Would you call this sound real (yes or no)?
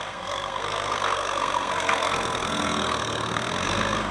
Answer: no